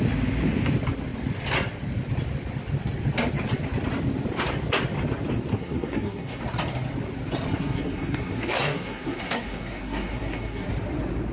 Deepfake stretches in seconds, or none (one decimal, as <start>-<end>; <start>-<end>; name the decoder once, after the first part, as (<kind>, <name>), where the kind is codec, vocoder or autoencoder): 5.5-6.4 (codec, SNAC); 7.5-10.7